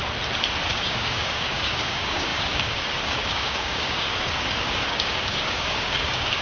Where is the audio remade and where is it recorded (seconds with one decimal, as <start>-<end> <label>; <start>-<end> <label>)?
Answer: 0.0-0.7 recorded; 0.7-6.4 remade